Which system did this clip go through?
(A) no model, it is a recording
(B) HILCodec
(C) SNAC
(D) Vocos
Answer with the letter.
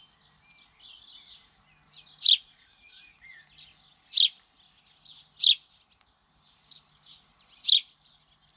A